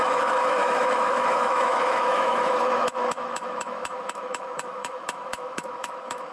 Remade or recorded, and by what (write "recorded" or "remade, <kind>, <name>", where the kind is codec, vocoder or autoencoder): remade, autoencoder, DAC-VAE